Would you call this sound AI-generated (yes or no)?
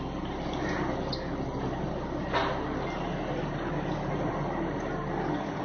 no